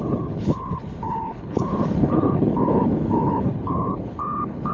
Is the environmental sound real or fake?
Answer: fake